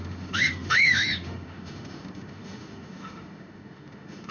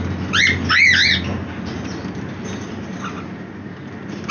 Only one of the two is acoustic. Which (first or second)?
second